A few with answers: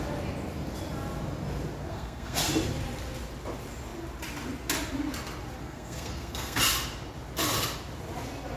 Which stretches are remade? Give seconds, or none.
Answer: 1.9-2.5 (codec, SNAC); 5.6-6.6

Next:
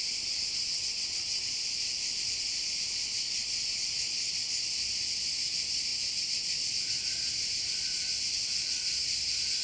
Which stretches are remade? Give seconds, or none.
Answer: 0.7-1.4 (vocoder, WaveNeXt)

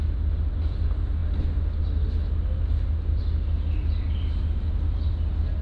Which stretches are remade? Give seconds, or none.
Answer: none

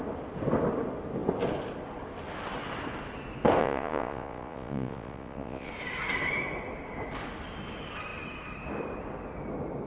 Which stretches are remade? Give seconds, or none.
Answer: 3.6-5.7 (vocoder, Vocos)

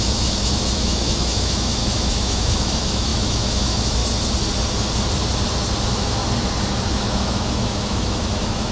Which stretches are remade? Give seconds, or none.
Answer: 0.0-4.0 (autoencoder, DAC-VAE); 5.8-6.2; 6.9-8.7

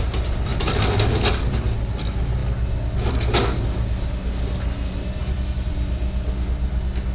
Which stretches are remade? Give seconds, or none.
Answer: none

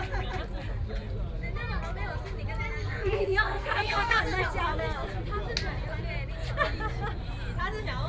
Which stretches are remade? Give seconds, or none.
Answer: 2.8-4.2 (codec, SNAC)

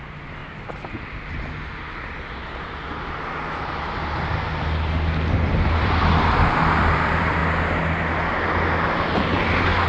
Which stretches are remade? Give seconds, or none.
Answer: 0.0-0.4 (vocoder, BigVGAN v2); 5.5-7.4